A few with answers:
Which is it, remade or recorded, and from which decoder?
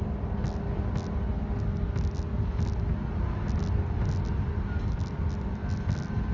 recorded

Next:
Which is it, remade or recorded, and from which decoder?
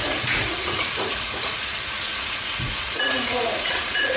remade, vocoder, Vocos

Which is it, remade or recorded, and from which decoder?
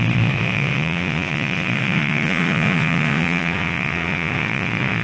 remade, vocoder, Vocos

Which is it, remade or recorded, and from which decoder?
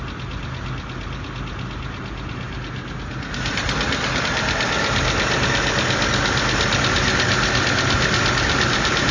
recorded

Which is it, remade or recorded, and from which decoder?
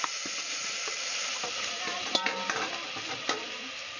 recorded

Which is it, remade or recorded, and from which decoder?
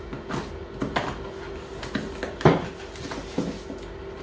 recorded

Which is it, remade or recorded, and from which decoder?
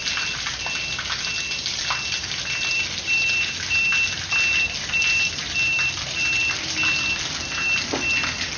recorded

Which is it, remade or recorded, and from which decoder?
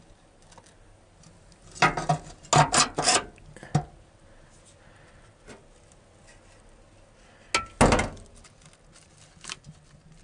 recorded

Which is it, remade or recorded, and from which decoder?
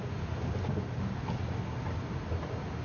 recorded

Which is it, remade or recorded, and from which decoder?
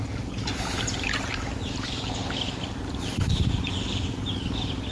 recorded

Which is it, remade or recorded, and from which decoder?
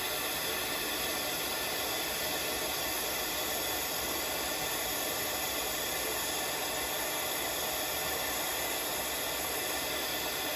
recorded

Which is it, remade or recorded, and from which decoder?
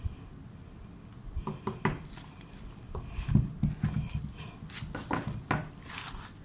recorded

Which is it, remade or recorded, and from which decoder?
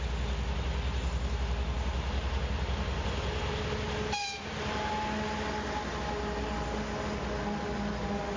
recorded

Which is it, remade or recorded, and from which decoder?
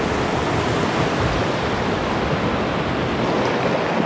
recorded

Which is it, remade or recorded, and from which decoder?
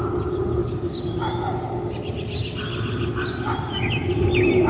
recorded